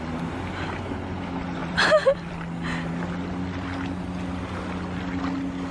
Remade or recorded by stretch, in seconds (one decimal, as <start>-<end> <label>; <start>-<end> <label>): 0.0-1.6 recorded; 1.6-2.3 remade; 2.3-5.7 recorded